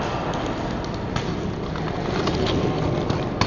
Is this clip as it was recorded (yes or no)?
yes